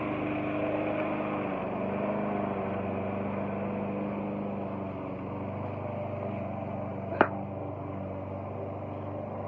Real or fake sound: real